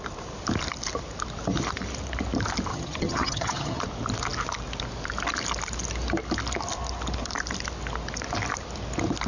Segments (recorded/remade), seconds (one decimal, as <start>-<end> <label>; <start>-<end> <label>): 0.0-2.7 recorded; 2.7-3.8 remade; 3.8-9.3 recorded